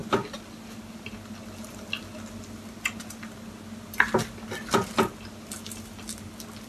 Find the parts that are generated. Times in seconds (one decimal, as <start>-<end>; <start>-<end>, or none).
none